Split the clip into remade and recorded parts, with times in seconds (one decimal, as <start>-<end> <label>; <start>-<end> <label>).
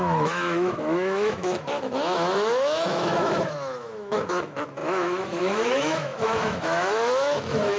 0.0-7.8 remade